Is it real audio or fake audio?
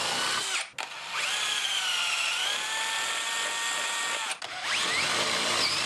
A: real